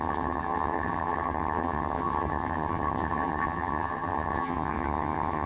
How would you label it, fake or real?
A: fake